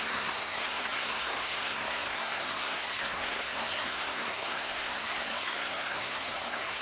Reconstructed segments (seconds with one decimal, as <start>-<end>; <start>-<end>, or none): 0.0-6.8